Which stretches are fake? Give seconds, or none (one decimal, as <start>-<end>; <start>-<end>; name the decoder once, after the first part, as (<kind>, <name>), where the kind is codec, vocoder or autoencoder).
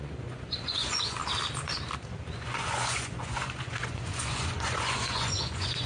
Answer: 0.0-1.2 (vocoder, Vocos); 2.3-5.9